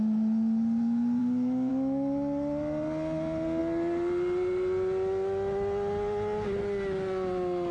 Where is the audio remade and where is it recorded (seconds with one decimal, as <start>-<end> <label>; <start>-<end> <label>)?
0.0-1.2 recorded; 1.2-1.7 remade; 1.7-7.7 recorded